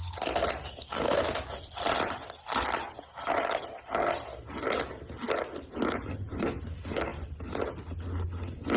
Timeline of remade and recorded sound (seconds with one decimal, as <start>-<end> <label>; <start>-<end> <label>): 0.0-8.8 recorded

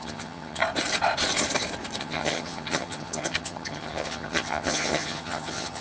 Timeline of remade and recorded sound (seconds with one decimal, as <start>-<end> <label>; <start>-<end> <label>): 0.0-0.6 remade; 0.6-2.0 recorded; 2.0-5.8 remade

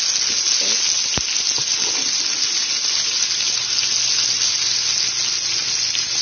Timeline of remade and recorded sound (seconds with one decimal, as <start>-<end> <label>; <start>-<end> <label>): 0.0-6.2 recorded

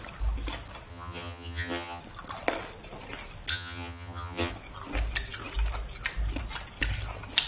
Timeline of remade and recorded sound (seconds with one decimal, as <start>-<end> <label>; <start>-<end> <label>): 0.0-0.9 recorded; 0.9-2.0 remade; 2.0-3.5 recorded; 3.5-4.5 remade; 4.5-7.5 recorded